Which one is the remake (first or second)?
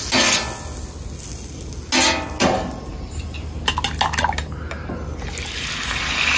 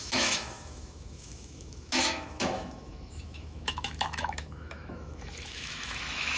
second